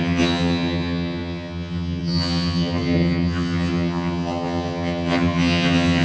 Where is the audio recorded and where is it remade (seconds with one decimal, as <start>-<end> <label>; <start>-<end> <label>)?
0.0-6.0 remade